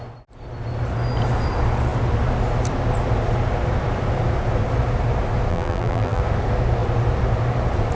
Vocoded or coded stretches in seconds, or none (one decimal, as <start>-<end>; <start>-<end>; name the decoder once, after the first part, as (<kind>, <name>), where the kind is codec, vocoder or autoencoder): 5.5-6.2 (vocoder, BigVGAN v2)